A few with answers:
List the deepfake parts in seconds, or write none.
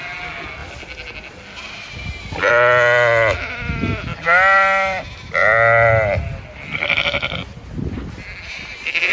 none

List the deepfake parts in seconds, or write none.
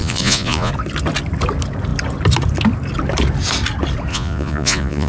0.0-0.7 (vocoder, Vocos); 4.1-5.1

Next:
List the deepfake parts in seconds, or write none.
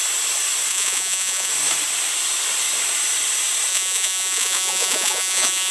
0.7-1.5 (vocoder, Vocos); 3.7-5.7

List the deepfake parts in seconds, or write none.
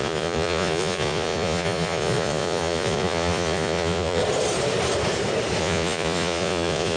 0.0-4.2 (vocoder, Vocos); 5.6-7.0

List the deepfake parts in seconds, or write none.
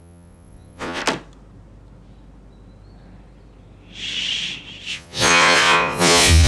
0.0-1.0 (vocoder, Vocos); 4.9-6.5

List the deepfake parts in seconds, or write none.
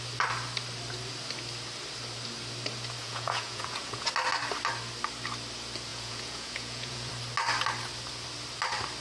3.0-4.1 (vocoder, Vocos); 5.9-7.1